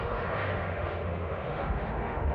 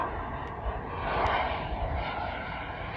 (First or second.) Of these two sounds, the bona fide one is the second